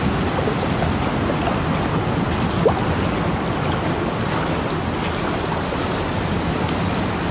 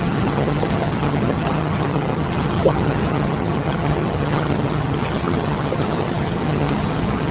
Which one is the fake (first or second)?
second